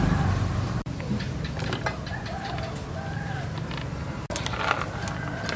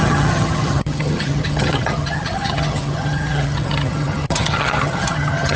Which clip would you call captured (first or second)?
first